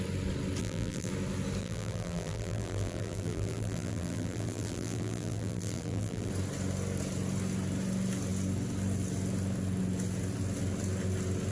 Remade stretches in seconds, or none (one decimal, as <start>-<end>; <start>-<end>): 0.6-1.1; 1.6-6.3